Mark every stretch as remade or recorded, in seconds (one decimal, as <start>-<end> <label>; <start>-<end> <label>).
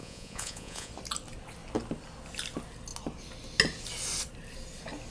0.0-0.9 remade; 0.9-5.1 recorded